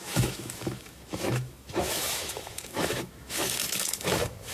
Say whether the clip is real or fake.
fake